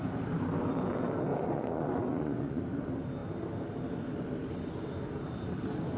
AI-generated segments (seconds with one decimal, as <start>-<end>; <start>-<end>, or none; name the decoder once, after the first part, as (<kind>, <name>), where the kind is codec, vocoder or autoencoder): 1.3-2.6 (vocoder, Vocos)